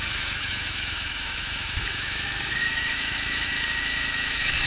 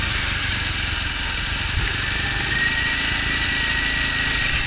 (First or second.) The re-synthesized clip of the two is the first